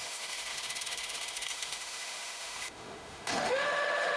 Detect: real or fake fake